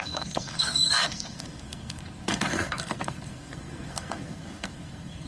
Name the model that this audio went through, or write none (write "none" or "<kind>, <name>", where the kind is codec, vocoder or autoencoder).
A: codec, SNAC